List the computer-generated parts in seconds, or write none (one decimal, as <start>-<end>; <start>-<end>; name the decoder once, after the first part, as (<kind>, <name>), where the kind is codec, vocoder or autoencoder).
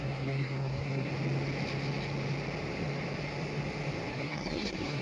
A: 0.0-1.1 (codec, SNAC); 4.1-5.0